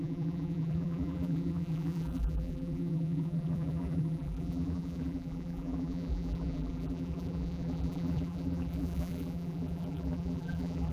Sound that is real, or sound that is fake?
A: fake